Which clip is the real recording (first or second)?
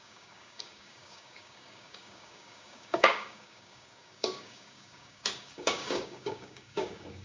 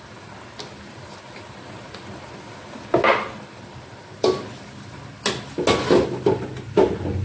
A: second